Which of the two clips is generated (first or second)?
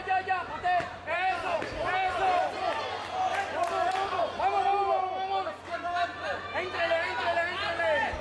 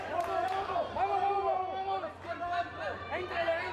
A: second